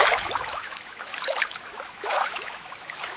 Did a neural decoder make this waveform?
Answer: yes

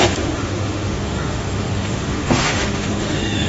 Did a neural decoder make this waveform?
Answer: yes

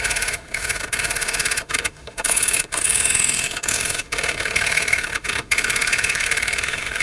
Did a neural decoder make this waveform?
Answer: yes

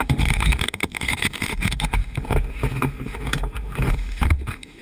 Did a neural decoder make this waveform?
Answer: yes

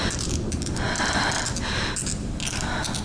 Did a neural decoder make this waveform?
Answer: no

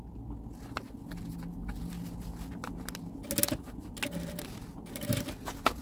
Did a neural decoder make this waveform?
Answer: no